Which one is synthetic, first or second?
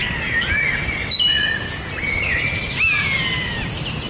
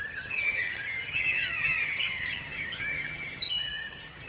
second